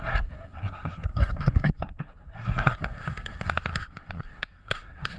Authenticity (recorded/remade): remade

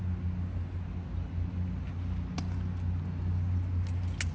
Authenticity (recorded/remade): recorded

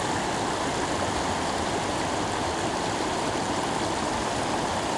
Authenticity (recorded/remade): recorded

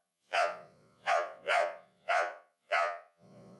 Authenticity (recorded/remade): remade